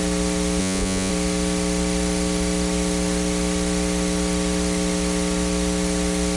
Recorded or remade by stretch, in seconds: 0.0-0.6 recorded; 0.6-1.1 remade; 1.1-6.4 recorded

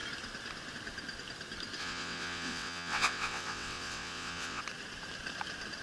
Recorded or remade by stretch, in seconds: 0.0-1.8 recorded; 1.8-4.6 remade; 4.6-5.8 recorded

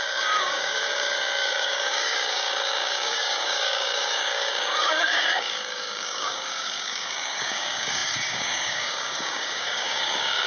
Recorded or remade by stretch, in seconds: 0.0-10.5 remade

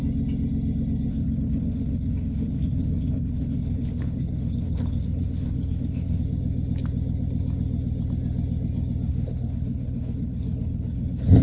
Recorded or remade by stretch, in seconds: 0.0-1.1 recorded; 1.1-6.2 remade; 6.2-9.1 recorded; 9.1-11.4 remade

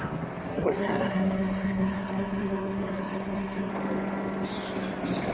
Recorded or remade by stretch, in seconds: 0.0-0.5 recorded; 0.5-3.7 remade; 3.7-5.3 recorded

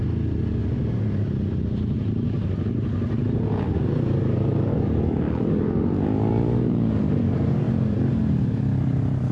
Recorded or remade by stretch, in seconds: 0.0-4.7 recorded; 4.7-7.7 remade; 7.7-9.3 recorded

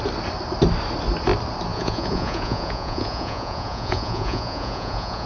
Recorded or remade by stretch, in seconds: 0.0-1.7 recorded; 1.7-5.3 remade

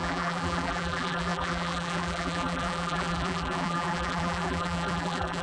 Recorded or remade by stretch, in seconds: 0.0-5.4 remade